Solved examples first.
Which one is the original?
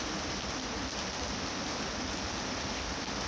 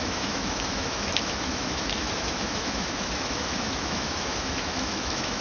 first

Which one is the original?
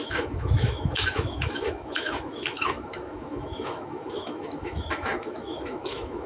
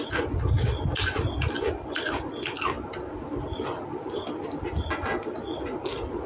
second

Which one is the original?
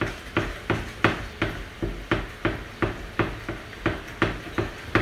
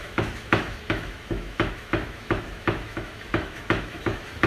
first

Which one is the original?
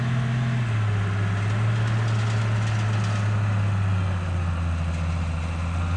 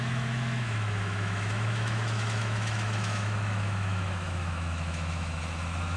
first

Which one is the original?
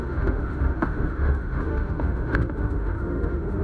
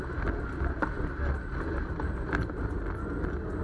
second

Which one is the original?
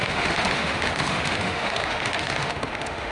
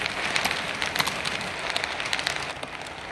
second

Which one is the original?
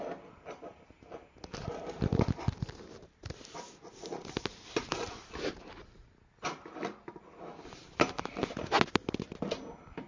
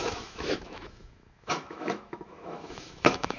first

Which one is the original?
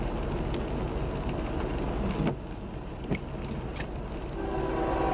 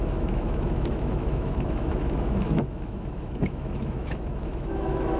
first